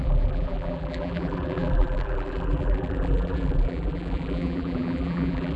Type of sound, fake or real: fake